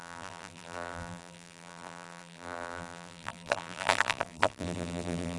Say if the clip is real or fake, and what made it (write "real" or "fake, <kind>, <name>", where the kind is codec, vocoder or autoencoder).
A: fake, vocoder, BigVGAN v2